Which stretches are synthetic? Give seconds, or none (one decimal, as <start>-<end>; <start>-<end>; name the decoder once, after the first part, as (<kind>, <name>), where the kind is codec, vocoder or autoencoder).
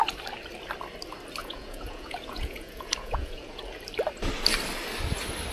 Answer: 1.4-3.6 (vocoder, Vocos)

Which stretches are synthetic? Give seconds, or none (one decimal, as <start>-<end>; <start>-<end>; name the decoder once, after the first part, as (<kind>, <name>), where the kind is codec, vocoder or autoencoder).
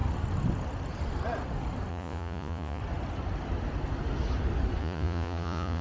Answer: 1.9-2.8 (vocoder, Vocos); 4.8-5.8